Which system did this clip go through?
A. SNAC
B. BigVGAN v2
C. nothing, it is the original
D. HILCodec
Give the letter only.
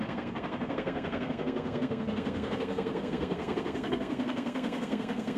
A